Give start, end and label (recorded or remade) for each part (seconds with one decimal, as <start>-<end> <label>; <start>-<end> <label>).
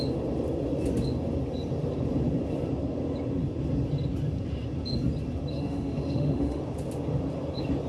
0.0-5.5 recorded; 5.5-6.6 remade; 6.6-7.9 recorded